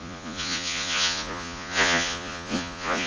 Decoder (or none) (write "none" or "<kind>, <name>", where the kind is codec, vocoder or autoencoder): vocoder, Vocos